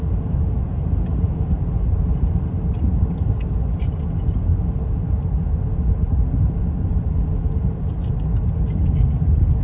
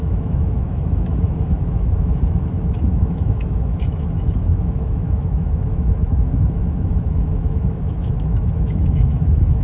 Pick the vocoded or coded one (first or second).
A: second